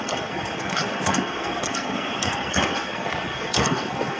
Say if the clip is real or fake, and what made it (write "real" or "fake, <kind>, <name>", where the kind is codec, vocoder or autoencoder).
fake, codec, SNAC